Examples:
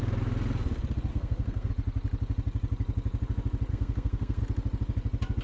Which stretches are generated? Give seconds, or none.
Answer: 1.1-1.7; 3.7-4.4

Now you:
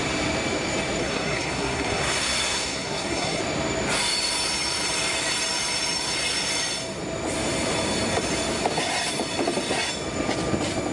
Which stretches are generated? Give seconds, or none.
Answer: 1.0-3.4

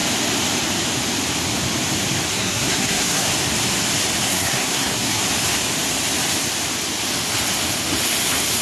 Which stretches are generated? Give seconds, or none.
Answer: 2.3-3.3; 4.3-5.2